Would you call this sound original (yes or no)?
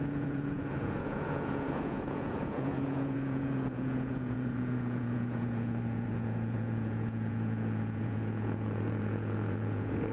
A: no